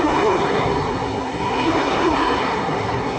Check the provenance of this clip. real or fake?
fake